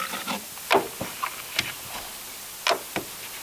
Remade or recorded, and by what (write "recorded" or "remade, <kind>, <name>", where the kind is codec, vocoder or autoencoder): recorded